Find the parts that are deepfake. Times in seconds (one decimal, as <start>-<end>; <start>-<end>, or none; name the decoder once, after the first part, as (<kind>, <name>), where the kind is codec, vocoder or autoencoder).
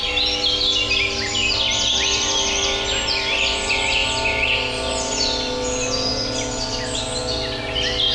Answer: none